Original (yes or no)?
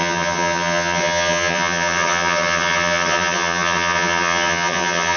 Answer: no